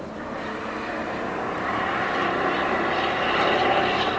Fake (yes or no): no